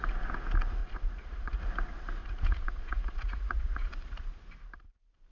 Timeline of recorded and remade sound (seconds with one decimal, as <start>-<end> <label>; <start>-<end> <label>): 0.0-0.8 recorded; 0.8-1.6 remade; 1.6-2.2 recorded; 2.2-3.9 remade; 3.9-5.3 recorded

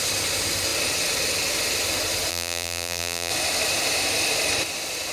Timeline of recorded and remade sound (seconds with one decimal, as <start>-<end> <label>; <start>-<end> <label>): 0.0-2.3 recorded; 2.3-3.3 remade; 3.3-5.1 recorded

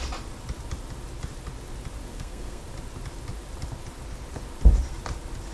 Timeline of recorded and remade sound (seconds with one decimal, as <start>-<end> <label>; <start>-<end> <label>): 0.0-2.1 recorded; 2.1-2.6 remade; 2.6-5.5 recorded

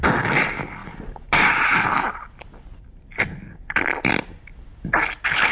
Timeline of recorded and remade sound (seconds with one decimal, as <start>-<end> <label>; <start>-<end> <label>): 0.0-5.5 recorded

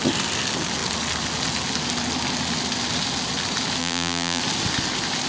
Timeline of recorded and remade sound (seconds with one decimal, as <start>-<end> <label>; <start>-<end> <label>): 0.0-3.8 recorded; 3.8-4.4 remade; 4.4-5.3 recorded

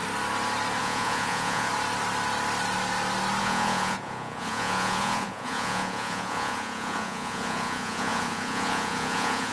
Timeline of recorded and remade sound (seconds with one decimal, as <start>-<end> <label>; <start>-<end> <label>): 0.0-0.8 recorded; 0.8-1.7 remade; 1.7-3.4 recorded; 3.4-9.5 remade

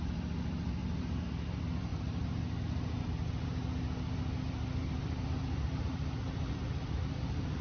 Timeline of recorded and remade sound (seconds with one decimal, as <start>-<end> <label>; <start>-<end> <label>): 0.0-0.8 recorded; 0.8-1.3 remade; 1.3-1.9 recorded; 1.9-2.6 remade; 2.6-7.6 recorded

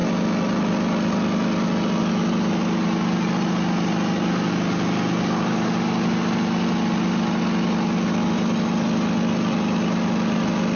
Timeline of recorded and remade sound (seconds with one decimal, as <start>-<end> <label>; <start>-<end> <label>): 0.0-10.8 recorded